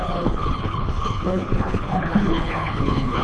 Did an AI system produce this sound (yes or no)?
yes